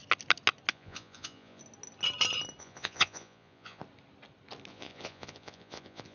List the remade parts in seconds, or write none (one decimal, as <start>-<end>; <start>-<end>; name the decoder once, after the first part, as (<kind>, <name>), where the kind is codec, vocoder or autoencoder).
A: 0.7-1.6 (vocoder, Vocos); 2.6-3.8; 4.7-6.1